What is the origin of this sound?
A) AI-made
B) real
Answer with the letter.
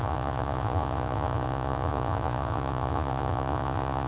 A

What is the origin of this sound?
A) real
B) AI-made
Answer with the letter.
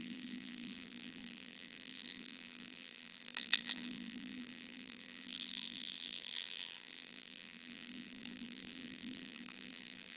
B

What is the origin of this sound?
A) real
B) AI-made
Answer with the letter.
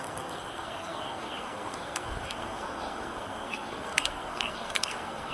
B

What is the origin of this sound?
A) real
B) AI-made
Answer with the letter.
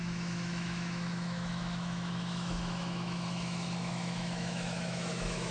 B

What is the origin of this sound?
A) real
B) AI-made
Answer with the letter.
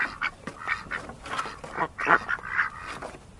A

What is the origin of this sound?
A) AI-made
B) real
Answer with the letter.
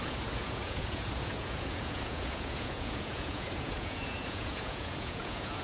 A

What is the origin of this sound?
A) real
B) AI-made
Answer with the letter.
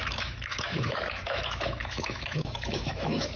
B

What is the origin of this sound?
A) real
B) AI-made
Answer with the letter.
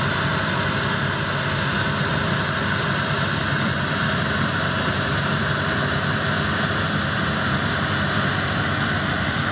A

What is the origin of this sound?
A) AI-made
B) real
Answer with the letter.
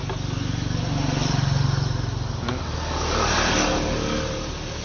B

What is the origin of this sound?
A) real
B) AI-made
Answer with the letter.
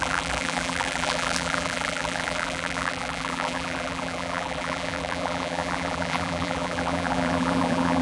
B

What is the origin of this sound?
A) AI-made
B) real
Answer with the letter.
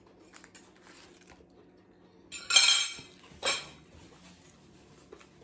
B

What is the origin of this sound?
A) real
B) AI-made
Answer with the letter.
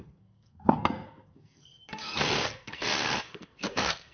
B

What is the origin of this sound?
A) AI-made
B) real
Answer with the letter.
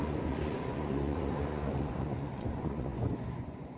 A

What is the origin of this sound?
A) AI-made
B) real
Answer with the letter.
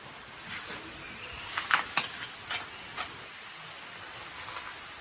B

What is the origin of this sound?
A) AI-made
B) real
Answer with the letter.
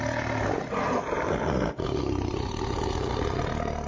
B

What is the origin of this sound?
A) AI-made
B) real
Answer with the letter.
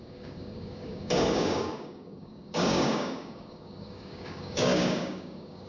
A